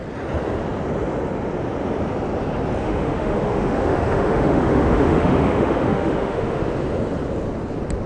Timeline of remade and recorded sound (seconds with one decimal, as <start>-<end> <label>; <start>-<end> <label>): 0.0-2.8 recorded; 2.8-6.6 remade; 6.6-8.1 recorded